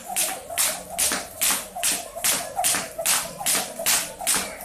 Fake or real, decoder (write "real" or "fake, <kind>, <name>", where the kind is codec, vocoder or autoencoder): real